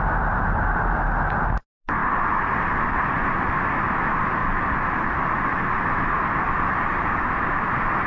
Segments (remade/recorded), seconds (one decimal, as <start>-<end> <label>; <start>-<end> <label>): 0.0-4.4 recorded; 4.4-5.6 remade; 5.6-8.1 recorded